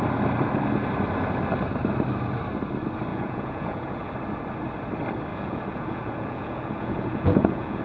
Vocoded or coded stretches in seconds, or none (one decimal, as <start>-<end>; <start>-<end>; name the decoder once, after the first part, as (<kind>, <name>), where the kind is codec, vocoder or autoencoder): 3.1-4.1 (vocoder, Vocos); 5.3-7.8